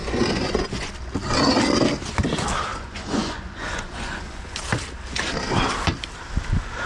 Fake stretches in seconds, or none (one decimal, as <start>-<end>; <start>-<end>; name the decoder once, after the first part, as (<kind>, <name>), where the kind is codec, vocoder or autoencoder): 0.0-0.9 (vocoder, Vocos); 2.7-4.6